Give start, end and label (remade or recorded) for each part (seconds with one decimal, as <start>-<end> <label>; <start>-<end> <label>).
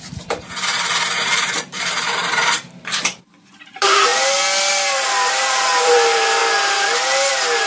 0.0-4.1 remade; 4.1-4.7 recorded; 4.7-6.4 remade; 6.4-7.3 recorded; 7.3-7.7 remade